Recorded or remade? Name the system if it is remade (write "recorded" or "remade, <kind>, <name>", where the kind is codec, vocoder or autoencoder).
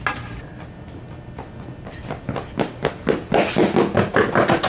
recorded